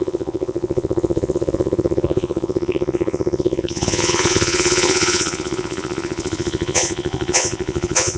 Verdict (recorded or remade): remade